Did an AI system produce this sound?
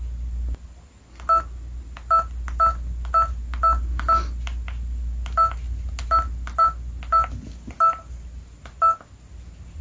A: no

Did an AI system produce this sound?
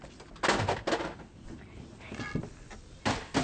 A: no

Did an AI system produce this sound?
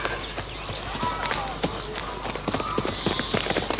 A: no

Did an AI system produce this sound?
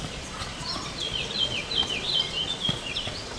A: yes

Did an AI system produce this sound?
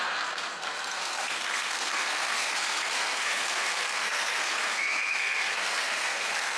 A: yes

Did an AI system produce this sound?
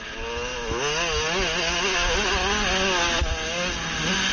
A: no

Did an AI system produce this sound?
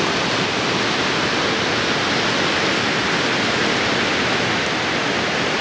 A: no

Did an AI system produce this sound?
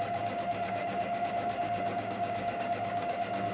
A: yes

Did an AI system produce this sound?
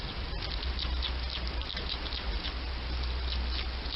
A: no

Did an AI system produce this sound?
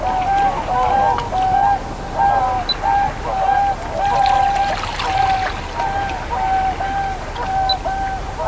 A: no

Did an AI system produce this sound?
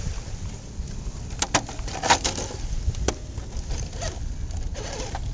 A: no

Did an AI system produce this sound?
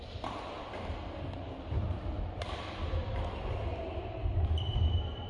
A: no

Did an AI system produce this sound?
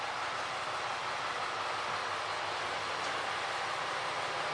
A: no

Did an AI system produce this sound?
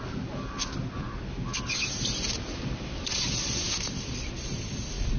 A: no